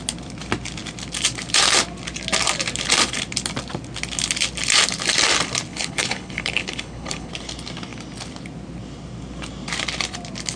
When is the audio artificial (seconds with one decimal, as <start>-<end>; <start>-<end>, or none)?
5.7-7.3